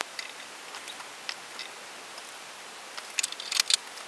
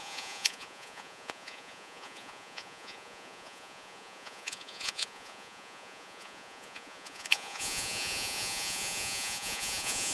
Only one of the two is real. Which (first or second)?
first